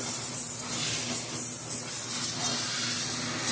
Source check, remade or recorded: recorded